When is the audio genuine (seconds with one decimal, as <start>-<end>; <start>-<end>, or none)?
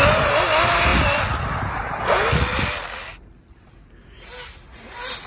0.0-5.3